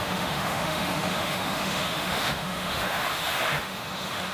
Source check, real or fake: fake